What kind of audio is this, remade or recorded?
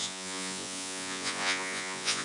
remade